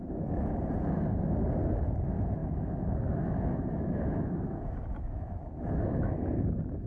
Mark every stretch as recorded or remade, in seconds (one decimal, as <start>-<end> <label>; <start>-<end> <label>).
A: 0.0-2.4 recorded; 2.4-6.5 remade; 6.5-6.9 recorded